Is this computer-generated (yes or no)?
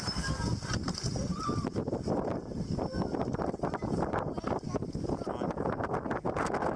no